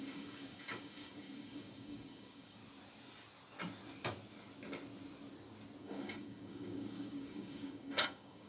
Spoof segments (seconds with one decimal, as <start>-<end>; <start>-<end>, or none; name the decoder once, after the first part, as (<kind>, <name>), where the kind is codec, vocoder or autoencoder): 0.0-2.6 (codec, DAC); 5.8-8.5